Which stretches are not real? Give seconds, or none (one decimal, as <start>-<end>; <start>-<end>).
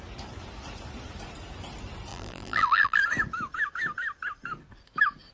2.1-3.0